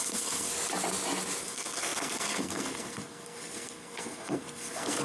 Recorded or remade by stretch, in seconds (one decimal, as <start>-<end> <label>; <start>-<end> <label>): 0.0-0.5 remade; 0.5-1.4 recorded; 1.4-5.0 remade